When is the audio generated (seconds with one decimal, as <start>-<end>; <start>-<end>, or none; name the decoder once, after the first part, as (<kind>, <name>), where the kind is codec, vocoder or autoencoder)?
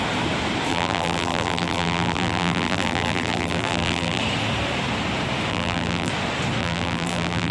0.7-4.2 (vocoder, BigVGAN v2); 5.5-6.1; 6.6-7.5